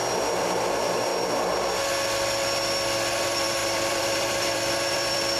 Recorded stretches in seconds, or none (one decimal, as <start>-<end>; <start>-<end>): 0.0-0.6; 1.1-3.1